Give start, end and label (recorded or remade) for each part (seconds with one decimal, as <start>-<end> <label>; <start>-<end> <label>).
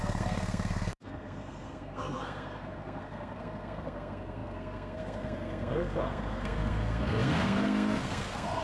0.0-8.6 remade